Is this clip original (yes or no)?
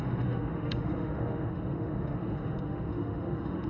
no